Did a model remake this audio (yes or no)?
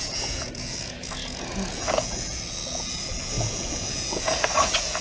yes